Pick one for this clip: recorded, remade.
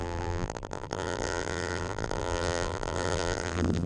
remade